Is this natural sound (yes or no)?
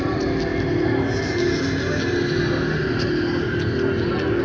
yes